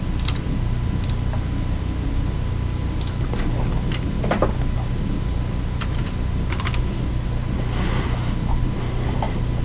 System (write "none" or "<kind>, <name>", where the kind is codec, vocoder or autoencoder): none